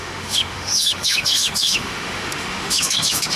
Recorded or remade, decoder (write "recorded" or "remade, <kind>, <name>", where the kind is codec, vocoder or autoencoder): remade, autoencoder, DAC-VAE